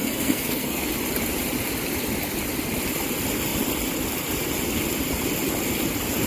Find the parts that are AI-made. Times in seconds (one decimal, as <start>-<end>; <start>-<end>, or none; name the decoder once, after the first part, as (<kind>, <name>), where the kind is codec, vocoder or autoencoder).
0.0-0.9 (codec, SNAC)